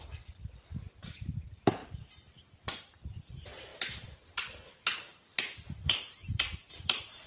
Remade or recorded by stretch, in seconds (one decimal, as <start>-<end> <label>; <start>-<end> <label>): 0.0-0.7 remade; 0.7-1.3 recorded; 1.3-1.8 remade; 1.8-3.3 recorded; 3.3-7.3 remade